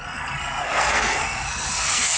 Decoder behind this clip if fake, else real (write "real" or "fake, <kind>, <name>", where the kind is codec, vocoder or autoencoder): fake, codec, SNAC